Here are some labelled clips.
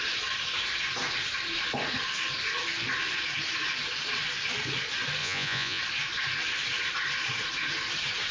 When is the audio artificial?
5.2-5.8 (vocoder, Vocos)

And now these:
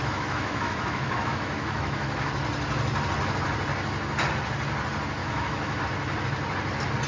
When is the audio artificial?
0.0-2.3 (autoencoder, DAC-VAE); 5.2-5.8